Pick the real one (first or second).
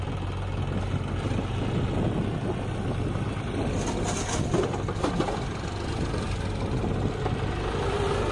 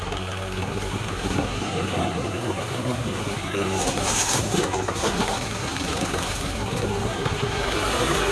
first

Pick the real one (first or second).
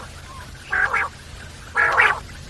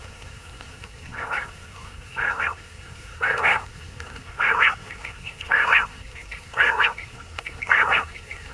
first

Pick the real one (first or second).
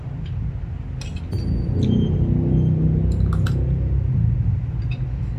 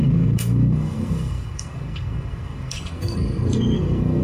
first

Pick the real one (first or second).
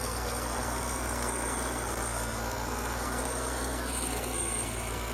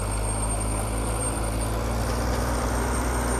second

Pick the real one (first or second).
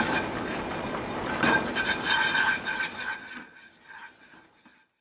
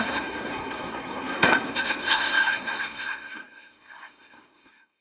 first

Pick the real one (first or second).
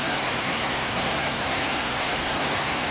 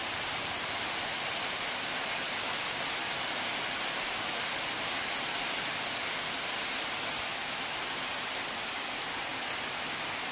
second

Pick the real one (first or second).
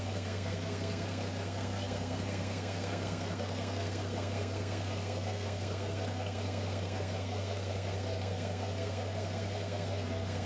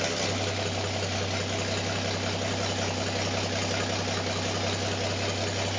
second